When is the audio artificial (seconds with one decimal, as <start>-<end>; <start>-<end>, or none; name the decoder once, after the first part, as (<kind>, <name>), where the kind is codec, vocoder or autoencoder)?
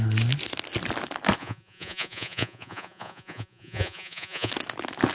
1.4-4.5 (vocoder, Vocos)